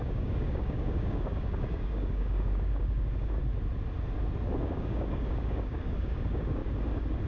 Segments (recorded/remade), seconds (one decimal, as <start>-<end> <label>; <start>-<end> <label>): 0.0-3.4 remade; 3.4-4.6 recorded; 4.6-6.6 remade; 6.6-7.3 recorded